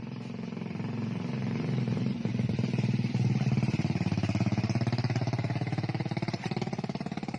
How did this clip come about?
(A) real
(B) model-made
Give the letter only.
B